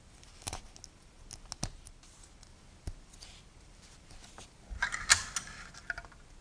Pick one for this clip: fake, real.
real